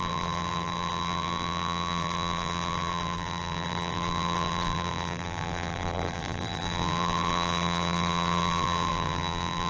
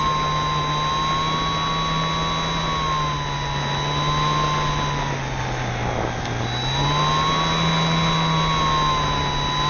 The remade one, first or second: first